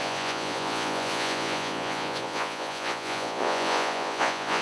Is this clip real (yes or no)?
no